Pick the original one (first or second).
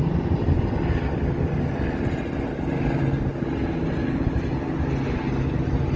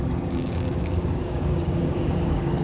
first